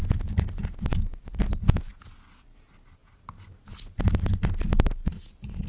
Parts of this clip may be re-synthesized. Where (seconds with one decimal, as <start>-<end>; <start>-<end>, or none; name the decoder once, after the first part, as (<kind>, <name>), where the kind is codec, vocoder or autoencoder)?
none